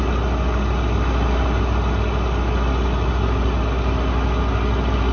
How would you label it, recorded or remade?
recorded